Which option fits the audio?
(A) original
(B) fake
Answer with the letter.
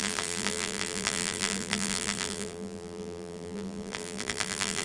B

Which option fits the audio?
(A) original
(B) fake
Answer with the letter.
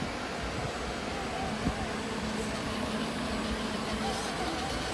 A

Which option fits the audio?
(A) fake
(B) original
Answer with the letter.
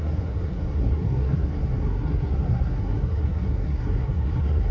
A